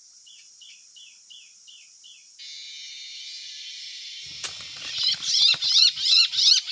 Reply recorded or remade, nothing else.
recorded